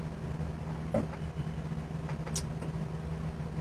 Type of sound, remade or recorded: recorded